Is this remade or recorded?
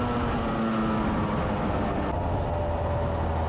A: recorded